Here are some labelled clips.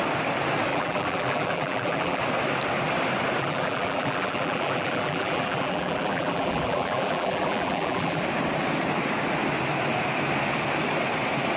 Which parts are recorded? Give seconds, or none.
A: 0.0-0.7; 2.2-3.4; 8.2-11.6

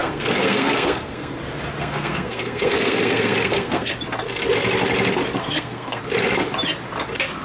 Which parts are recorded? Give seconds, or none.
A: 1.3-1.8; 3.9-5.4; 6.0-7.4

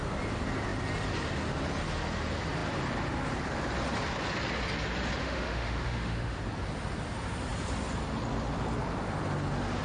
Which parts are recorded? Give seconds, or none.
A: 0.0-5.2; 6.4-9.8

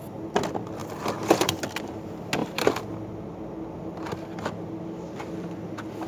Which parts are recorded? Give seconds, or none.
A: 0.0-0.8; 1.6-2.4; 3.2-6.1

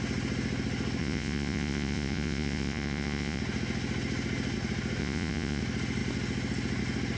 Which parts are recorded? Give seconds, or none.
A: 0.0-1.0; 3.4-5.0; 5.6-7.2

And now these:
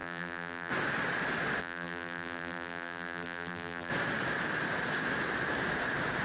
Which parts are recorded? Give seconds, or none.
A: 0.7-1.6; 3.9-6.2

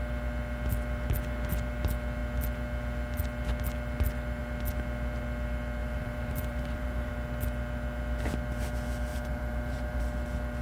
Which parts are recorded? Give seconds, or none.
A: 0.0-5.8; 7.1-9.1; 10.0-10.6

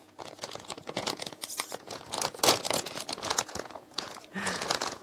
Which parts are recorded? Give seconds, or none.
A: none